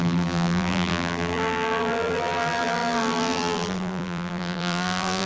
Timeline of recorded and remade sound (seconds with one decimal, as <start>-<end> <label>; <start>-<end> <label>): 0.0-5.3 remade